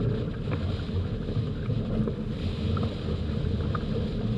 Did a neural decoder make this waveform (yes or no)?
no